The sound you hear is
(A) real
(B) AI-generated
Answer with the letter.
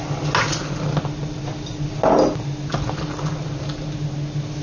A